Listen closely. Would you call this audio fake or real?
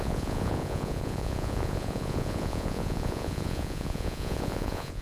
fake